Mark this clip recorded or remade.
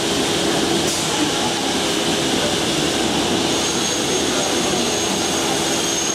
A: recorded